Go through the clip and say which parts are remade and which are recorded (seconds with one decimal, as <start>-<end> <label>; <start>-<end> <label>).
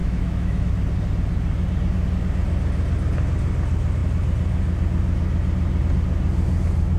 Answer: 0.0-0.7 remade; 0.7-7.0 recorded